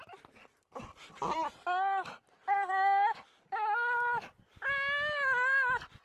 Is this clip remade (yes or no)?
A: no